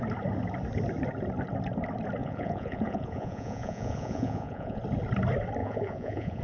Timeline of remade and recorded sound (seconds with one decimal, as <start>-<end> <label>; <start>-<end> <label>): 0.0-2.2 recorded; 2.2-4.8 remade; 4.8-5.6 recorded; 5.6-6.4 remade